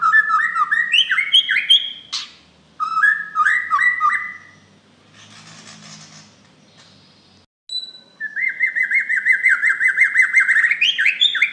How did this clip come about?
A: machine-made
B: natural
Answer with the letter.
B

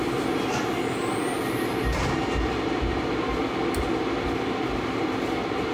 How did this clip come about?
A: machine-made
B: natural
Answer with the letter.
B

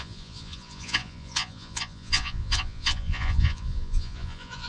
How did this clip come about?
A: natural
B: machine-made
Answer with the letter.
B